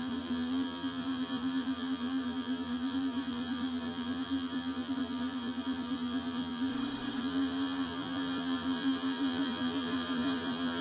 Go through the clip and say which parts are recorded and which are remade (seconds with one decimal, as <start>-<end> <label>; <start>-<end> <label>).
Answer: 0.0-6.7 remade; 6.7-7.2 recorded; 7.2-10.8 remade